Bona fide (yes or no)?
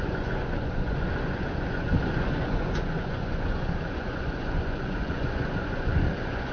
no